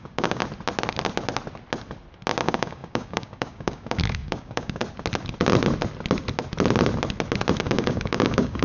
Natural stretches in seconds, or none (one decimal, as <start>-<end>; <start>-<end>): 0.4-2.4; 4.8-7.6